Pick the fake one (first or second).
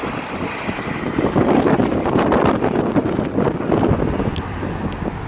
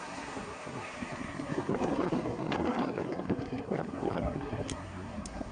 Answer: second